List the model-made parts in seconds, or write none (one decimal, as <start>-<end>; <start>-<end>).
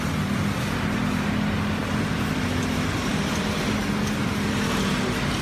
none